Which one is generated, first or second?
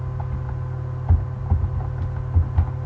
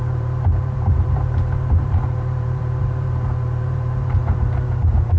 second